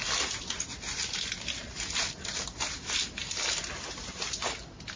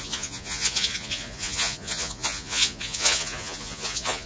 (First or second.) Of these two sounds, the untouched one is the first